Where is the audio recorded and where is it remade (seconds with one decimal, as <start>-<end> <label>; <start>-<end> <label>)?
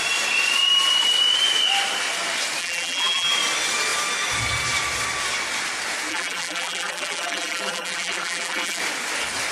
0.0-2.6 recorded; 2.6-3.3 remade; 3.3-6.1 recorded; 6.1-8.8 remade; 8.8-9.5 recorded